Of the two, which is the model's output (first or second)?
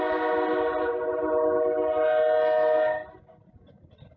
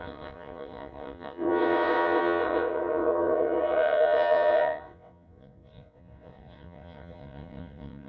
second